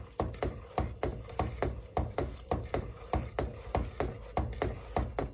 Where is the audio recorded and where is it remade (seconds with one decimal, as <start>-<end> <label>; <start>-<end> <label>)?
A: 0.0-1.1 recorded; 1.1-3.7 remade; 3.7-5.3 recorded